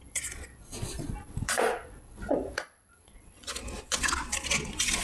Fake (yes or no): yes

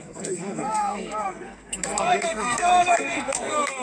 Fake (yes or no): yes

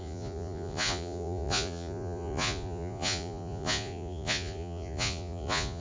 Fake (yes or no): yes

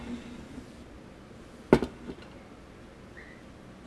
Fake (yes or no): no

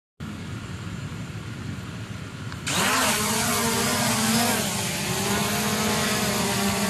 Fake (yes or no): no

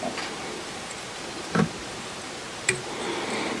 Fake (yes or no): yes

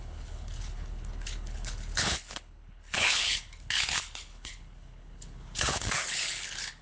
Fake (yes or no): yes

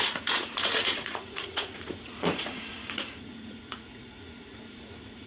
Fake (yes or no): yes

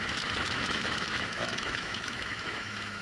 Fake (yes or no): yes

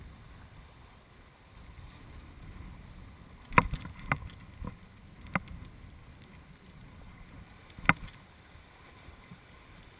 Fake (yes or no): no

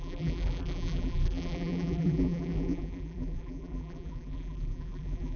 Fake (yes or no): yes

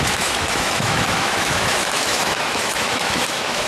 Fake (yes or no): yes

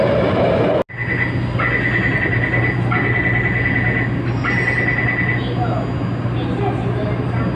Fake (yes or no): no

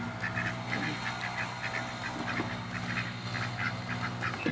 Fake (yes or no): no